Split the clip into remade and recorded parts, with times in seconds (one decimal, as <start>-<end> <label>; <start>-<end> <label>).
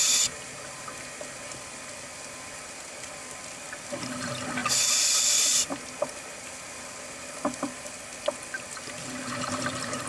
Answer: 0.0-10.1 recorded